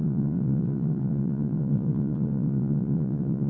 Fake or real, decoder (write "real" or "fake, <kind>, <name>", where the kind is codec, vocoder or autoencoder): fake, vocoder, WaveNeXt